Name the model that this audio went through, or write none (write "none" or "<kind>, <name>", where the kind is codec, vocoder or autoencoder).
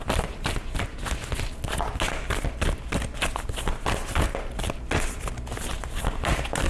none